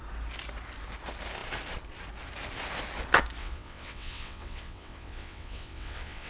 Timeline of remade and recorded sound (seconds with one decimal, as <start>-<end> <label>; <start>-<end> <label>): 0.0-3.4 recorded; 3.4-6.3 remade

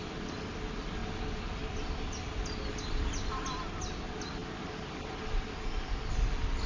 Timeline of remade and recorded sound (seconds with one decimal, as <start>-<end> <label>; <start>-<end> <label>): 0.0-6.7 recorded

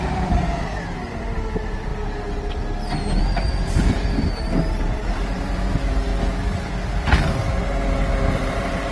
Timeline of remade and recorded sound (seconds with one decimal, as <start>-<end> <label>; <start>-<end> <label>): 0.0-1.9 remade; 1.9-3.2 recorded; 3.2-6.1 remade; 6.1-8.3 recorded; 8.3-8.9 remade

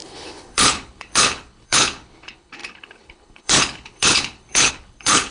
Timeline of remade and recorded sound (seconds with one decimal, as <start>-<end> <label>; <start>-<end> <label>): 0.0-5.3 remade

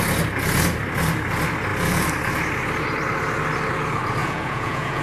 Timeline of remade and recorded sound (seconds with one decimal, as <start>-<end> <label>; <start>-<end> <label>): 0.0-4.2 recorded; 4.2-5.0 remade

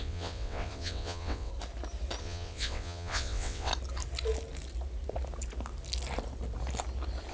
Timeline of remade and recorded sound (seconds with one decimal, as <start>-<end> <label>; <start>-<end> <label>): 0.0-1.5 remade; 1.5-2.2 recorded; 2.2-3.7 remade; 3.7-7.3 recorded